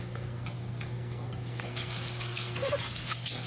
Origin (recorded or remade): remade